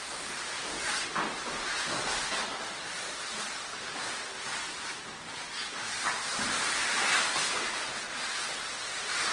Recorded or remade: remade